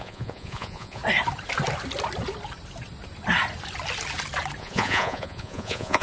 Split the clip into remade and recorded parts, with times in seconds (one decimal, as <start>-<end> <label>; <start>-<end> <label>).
0.0-1.0 remade; 1.0-4.6 recorded; 4.6-6.0 remade